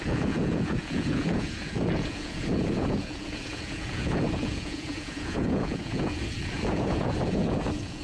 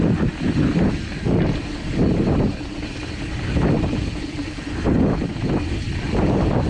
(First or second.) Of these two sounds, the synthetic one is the first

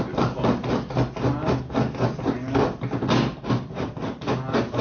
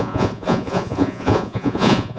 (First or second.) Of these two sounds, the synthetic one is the second